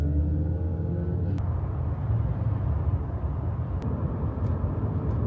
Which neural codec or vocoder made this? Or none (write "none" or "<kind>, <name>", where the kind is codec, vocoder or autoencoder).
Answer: none